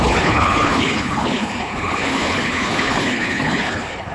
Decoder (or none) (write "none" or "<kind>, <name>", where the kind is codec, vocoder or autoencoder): codec, HILCodec